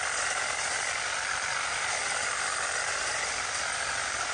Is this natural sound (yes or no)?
yes